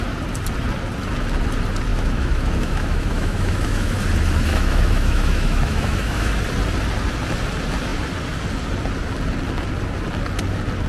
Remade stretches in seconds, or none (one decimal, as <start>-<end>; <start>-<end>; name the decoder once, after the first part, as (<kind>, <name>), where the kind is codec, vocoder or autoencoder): 1.9-4.0 (autoencoder, DAC-VAE); 4.5-6.3